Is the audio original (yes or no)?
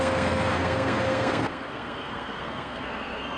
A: no